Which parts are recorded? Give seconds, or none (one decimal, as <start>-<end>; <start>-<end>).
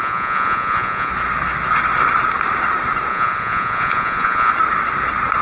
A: 1.1-3.1; 4.5-5.4